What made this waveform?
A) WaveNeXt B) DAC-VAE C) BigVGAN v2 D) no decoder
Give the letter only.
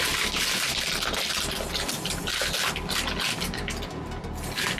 D